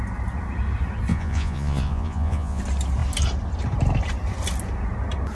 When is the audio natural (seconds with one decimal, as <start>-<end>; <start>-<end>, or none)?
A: 0.0-1.1; 2.6-5.3